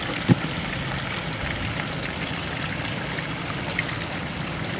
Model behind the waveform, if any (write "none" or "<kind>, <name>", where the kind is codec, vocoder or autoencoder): none